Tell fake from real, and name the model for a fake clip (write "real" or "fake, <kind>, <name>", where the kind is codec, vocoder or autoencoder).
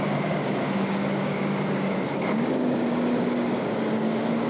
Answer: fake, codec, DAC